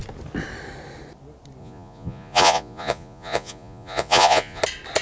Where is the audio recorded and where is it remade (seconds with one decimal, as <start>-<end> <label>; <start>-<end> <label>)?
0.0-1.6 recorded; 1.6-4.6 remade; 4.6-5.0 recorded